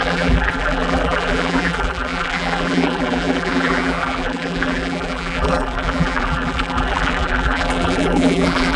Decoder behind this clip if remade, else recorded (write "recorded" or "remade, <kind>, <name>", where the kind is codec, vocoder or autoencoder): remade, vocoder, BigVGAN v2